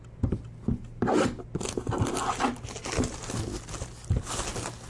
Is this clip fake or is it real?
real